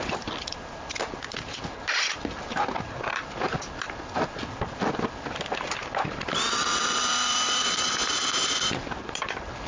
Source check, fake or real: real